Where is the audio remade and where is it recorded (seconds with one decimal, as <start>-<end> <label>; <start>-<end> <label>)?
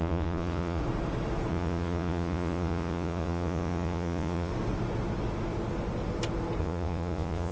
0.0-0.8 remade; 0.8-1.5 recorded; 1.5-4.5 remade; 4.5-6.6 recorded; 6.6-7.5 remade